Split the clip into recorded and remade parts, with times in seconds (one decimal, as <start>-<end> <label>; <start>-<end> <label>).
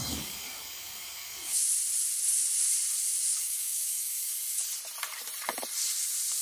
0.0-1.6 remade; 1.6-3.3 recorded; 3.3-4.3 remade; 4.3-6.4 recorded